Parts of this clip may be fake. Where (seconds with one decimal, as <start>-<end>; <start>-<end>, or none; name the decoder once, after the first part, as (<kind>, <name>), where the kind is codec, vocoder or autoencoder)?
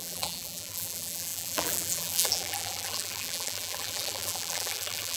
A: 0.0-5.2 (vocoder, BigVGAN v2)